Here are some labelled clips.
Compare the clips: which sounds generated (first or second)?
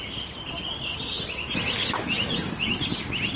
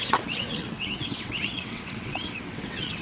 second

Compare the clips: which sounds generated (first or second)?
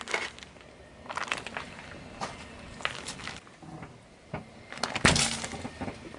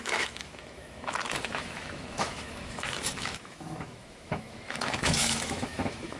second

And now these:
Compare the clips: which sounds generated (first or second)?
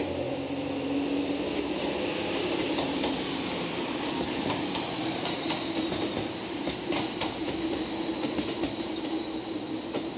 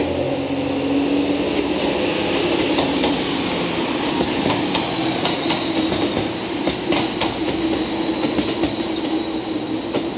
first